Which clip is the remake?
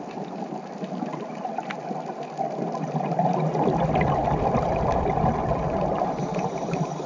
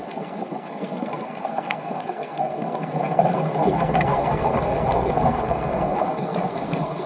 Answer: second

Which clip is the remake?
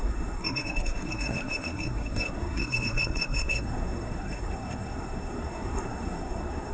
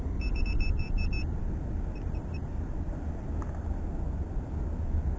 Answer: first